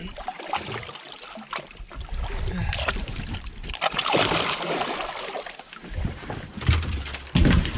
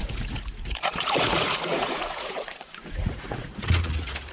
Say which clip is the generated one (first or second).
second